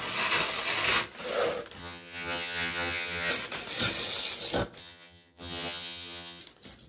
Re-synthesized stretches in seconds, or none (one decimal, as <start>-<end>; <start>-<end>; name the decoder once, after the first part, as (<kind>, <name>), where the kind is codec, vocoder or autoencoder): 1.8-3.3 (vocoder, HiFi-GAN); 4.8-6.4